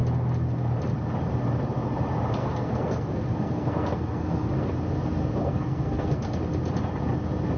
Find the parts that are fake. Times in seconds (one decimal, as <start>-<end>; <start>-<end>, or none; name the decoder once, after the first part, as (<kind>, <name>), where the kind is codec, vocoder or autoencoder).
2.4-4.7 (codec, SNAC); 5.4-6.4